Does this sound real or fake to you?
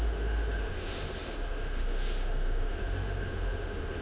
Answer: fake